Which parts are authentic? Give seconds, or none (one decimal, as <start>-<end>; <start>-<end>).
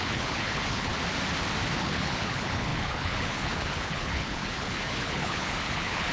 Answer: 0.9-1.8